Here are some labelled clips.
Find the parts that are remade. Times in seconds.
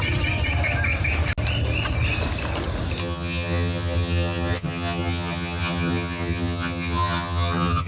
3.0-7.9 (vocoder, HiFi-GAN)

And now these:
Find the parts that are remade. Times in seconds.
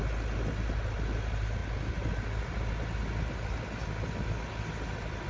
none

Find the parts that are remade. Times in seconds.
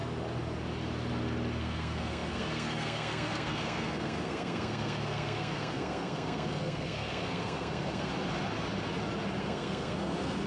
1.6-8.1 (codec, SNAC); 9.4-10.5